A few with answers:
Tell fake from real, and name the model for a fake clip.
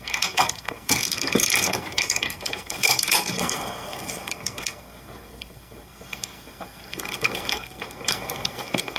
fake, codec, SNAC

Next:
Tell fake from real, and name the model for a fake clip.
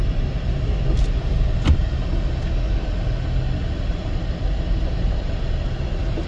real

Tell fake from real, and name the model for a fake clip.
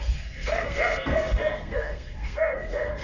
fake, codec, SNAC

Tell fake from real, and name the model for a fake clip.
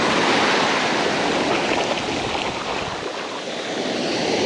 real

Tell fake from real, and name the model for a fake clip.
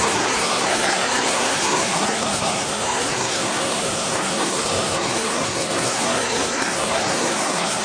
fake, codec, SNAC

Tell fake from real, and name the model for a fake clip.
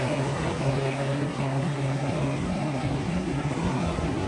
fake, codec, SNAC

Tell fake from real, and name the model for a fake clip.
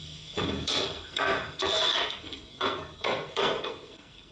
fake, codec, SNAC